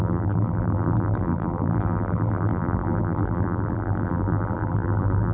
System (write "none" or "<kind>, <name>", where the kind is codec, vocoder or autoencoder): vocoder, BigVGAN v2